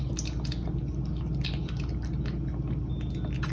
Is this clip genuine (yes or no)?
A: yes